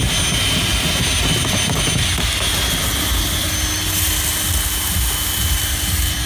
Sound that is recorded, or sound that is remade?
recorded